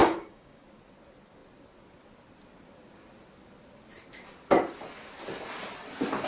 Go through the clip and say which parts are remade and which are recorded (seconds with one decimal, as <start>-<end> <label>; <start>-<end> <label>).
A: 0.0-0.6 remade; 0.6-6.3 recorded

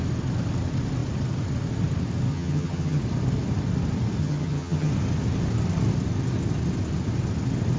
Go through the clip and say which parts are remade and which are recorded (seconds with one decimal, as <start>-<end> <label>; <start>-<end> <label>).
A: 0.0-2.3 recorded; 2.3-3.0 remade; 3.0-4.2 recorded; 4.2-4.9 remade; 4.9-7.8 recorded

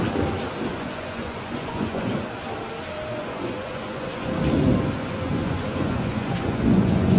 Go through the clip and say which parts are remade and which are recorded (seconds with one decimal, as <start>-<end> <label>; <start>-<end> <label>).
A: 0.0-0.7 recorded; 0.7-2.1 remade; 2.1-3.1 recorded; 3.1-4.3 remade; 4.3-5.0 recorded; 5.0-7.2 remade

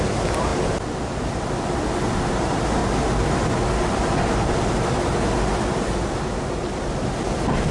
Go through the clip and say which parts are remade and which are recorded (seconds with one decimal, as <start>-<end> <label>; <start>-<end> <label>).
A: 0.0-7.7 recorded